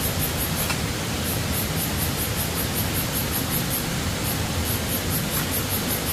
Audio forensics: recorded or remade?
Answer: recorded